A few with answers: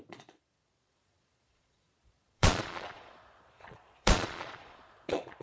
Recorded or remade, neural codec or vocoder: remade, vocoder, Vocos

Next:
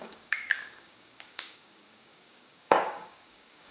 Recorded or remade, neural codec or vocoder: remade, codec, DAC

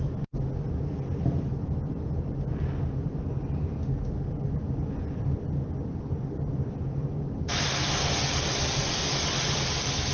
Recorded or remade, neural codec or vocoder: recorded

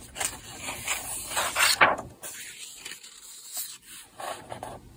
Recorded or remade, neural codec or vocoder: recorded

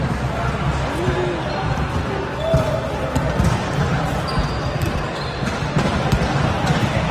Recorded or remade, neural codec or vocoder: recorded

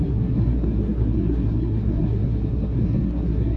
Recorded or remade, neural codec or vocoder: remade, codec, SNAC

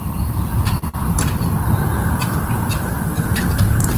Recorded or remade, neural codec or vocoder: remade, vocoder, BigVGAN v2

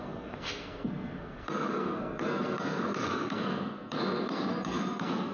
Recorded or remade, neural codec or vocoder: remade, codec, SNAC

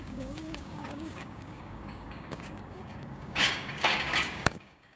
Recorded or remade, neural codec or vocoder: remade, codec, DAC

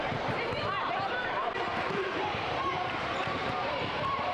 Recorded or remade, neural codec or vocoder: remade, vocoder, BigVGAN v2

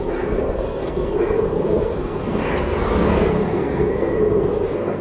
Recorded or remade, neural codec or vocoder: remade, codec, SNAC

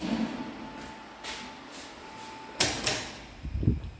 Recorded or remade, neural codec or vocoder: recorded